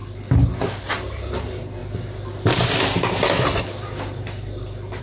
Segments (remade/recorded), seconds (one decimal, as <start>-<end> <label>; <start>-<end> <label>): 0.0-5.0 recorded